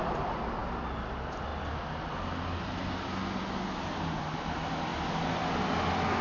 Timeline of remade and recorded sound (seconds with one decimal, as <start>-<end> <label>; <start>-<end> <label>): 0.0-6.2 recorded